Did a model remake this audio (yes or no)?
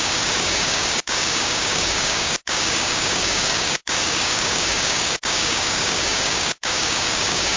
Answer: yes